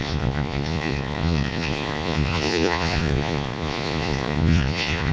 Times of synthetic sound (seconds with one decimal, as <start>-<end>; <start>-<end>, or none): 0.0-5.1